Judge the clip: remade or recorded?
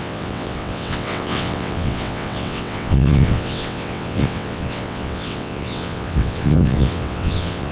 remade